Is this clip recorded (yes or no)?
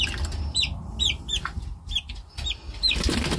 yes